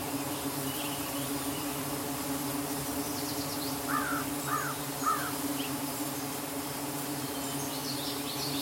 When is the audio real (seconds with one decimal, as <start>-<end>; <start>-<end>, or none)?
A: 2.0-4.8; 7.5-8.6